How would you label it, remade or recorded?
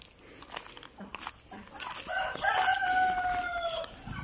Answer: recorded